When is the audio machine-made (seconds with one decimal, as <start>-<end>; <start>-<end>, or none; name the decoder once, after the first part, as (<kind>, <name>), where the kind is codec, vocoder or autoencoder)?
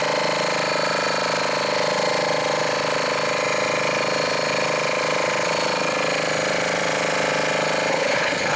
7.9-8.6 (codec, HILCodec)